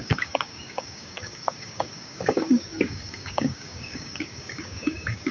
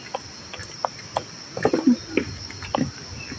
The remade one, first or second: first